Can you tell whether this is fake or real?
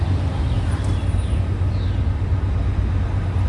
real